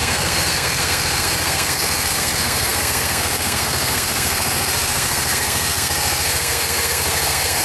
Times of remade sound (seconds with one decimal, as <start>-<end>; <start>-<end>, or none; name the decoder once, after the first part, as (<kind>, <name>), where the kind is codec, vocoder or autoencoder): 0.0-7.6 (codec, SNAC)